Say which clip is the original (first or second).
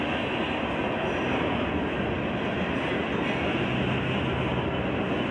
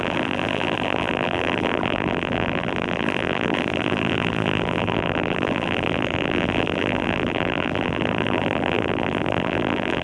first